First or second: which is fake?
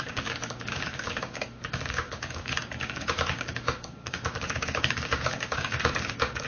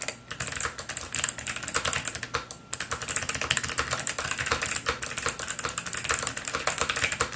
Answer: first